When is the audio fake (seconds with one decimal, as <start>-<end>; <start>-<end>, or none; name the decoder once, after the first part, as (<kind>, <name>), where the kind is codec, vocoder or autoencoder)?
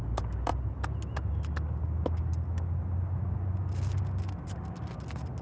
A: none